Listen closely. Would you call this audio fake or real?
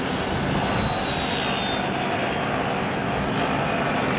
real